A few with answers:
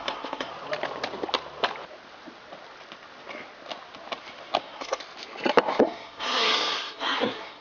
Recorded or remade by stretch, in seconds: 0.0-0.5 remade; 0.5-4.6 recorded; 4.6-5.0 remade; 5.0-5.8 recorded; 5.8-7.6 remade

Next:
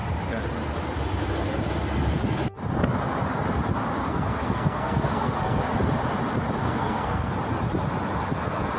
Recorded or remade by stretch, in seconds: 0.0-4.1 recorded; 4.1-5.6 remade; 5.6-6.6 recorded; 6.6-7.3 remade; 7.3-8.8 recorded

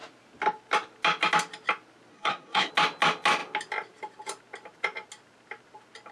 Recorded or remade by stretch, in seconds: 0.0-2.1 recorded; 2.1-2.7 remade; 2.7-6.1 recorded

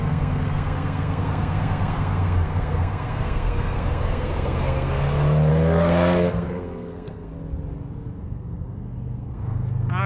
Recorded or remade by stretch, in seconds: 0.0-4.9 remade; 4.9-5.5 recorded; 5.5-7.3 remade; 7.3-8.2 recorded; 8.2-10.1 remade

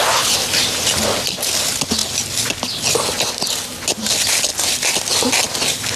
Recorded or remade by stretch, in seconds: 0.0-6.0 recorded